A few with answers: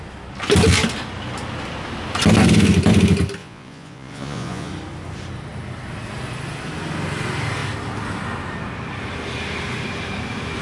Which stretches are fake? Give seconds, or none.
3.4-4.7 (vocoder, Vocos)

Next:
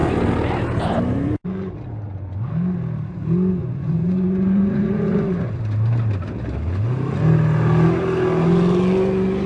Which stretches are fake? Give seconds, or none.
3.6-5.5 (vocoder, Vocos)

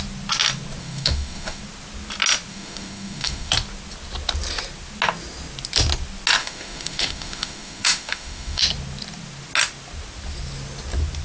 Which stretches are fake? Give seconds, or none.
0.8-1.6 (autoencoder, DAC-VAE); 2.5-3.5; 6.4-8.6